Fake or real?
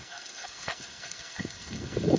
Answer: fake